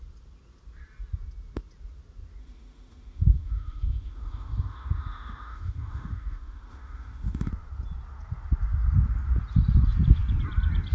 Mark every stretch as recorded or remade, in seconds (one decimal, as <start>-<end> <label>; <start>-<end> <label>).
0.0-2.4 recorded; 2.4-7.5 remade; 7.5-10.9 recorded